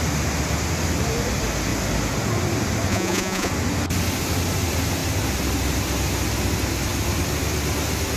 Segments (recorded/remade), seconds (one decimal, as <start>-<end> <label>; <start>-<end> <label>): 0.0-2.9 recorded; 2.9-3.5 remade; 3.5-8.2 recorded